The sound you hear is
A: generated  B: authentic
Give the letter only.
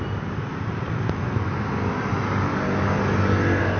B